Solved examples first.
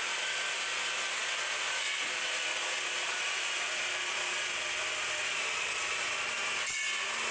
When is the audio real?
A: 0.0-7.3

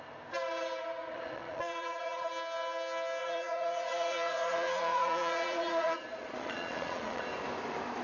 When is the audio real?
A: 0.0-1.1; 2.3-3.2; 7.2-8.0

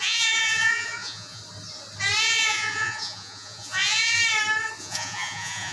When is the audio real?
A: 1.4-2.2; 4.2-4.8

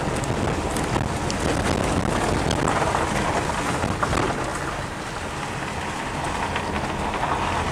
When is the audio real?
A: 0.0-7.7